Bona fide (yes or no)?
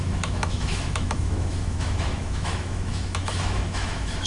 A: no